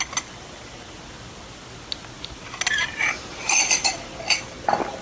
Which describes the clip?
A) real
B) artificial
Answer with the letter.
A